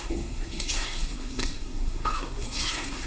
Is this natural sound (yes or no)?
no